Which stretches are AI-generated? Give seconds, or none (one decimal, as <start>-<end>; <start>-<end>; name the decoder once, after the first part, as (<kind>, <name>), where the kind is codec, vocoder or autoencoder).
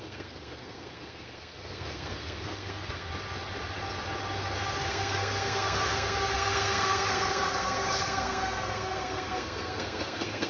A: 0.0-3.1 (codec, SNAC); 4.8-10.5